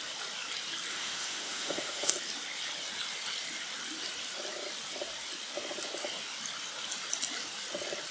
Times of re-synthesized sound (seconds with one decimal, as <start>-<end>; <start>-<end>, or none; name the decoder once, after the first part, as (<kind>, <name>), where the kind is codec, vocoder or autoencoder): 0.9-2.1 (autoencoder, DAC-VAE)

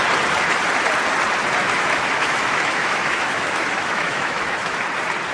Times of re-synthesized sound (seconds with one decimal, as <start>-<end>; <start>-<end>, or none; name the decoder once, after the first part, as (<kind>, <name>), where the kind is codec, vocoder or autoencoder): 1.6-4.8 (autoencoder, DAC-VAE)

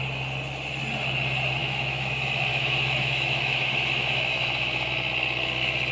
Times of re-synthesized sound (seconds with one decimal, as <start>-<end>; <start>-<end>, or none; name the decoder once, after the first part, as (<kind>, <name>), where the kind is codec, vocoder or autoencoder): 1.6-2.1 (autoencoder, DAC-VAE); 2.5-4.9

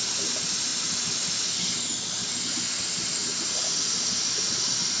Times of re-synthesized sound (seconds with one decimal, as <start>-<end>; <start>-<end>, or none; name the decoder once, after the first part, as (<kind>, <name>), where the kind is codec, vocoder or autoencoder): none

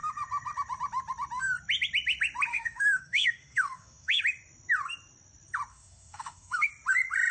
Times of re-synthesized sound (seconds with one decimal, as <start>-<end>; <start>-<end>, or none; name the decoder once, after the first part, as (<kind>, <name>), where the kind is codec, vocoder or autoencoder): 2.5-4.2 (autoencoder, DAC-VAE); 5.7-6.7